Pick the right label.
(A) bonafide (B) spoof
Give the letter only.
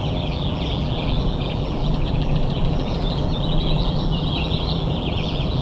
B